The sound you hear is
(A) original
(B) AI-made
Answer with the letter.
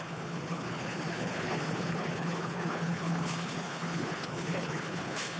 B